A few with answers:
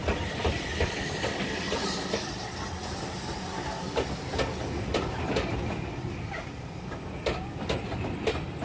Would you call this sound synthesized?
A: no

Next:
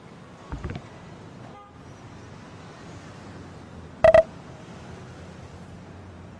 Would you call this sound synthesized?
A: no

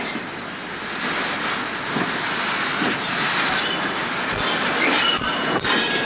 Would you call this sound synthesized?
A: no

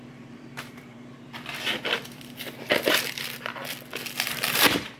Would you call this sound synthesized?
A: yes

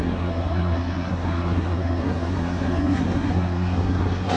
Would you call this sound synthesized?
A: yes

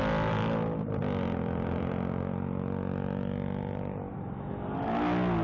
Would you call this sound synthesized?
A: no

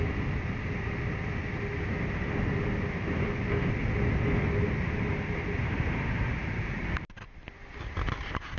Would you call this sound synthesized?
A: no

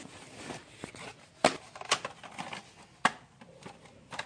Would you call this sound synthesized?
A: no